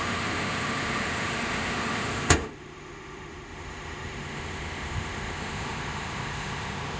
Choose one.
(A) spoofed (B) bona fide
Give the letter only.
A